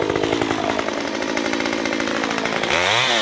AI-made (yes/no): no